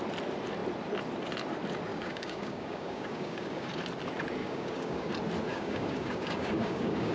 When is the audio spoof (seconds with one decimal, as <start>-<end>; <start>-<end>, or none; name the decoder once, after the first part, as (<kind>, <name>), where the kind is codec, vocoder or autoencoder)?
1.9-3.7 (codec, DAC); 4.4-5.1; 5.5-7.1